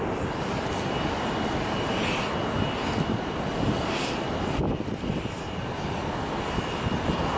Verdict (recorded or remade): recorded